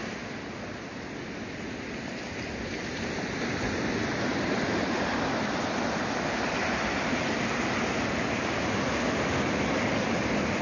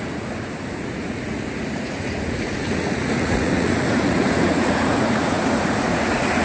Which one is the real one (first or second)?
first